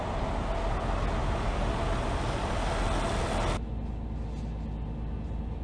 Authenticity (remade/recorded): recorded